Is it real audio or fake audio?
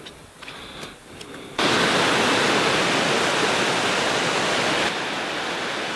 real